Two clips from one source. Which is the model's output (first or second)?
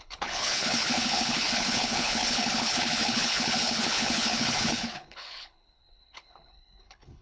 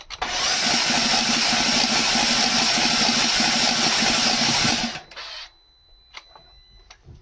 first